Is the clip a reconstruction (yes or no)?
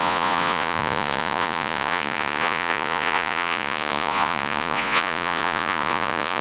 yes